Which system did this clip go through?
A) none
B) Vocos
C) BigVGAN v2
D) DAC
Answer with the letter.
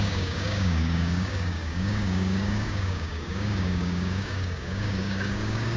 D